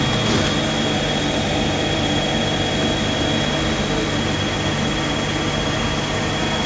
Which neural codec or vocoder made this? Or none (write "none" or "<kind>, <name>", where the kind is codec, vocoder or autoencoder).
none